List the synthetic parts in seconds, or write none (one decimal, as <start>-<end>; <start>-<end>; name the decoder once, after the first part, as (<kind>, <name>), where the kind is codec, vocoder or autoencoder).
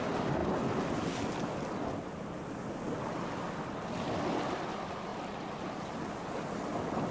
none